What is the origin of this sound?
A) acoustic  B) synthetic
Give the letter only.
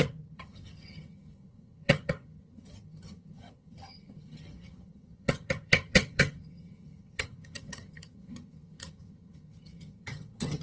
B